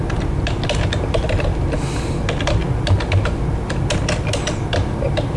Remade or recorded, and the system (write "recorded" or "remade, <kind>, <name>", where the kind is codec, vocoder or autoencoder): recorded